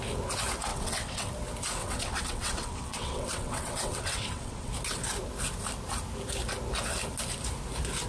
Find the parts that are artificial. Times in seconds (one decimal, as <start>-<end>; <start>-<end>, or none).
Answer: 0.7-1.3; 1.8-4.7